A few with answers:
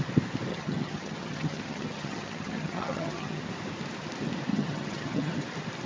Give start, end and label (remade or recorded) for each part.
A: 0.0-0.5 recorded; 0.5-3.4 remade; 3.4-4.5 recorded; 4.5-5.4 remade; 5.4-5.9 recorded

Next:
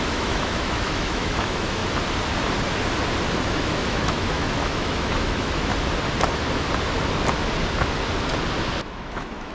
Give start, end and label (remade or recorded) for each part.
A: 0.0-1.8 remade; 1.8-3.5 recorded; 3.5-5.7 remade; 5.7-8.8 recorded; 8.8-9.5 remade

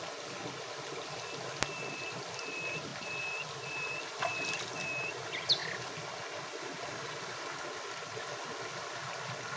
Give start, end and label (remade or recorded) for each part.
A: 0.0-9.6 recorded

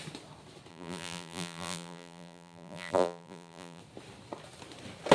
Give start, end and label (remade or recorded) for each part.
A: 0.0-0.7 recorded; 0.7-3.8 remade; 3.8-5.1 recorded